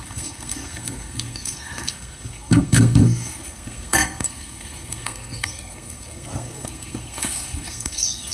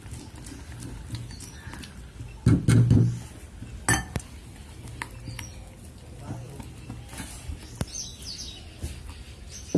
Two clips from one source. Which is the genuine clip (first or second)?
second